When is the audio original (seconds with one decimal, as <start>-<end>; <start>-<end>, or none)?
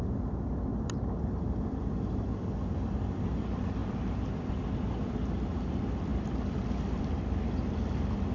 0.0-0.7; 1.4-8.3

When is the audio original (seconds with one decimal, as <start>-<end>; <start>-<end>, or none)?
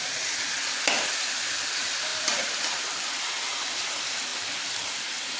4.3-5.0